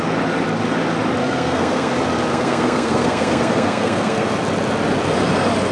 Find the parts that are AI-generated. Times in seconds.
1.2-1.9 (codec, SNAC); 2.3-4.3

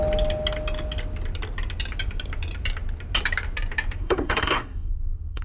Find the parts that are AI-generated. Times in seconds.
4.0-5.4 (codec, SNAC)

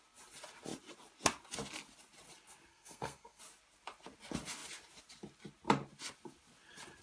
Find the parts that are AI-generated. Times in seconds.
2.7-3.4 (codec, SNAC)

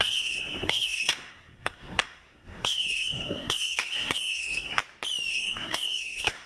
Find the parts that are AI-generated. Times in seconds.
0.0-4.8 (codec, SNAC); 5.3-6.5

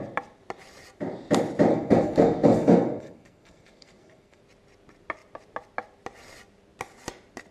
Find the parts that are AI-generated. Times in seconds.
1.7-4.4 (codec, SNAC)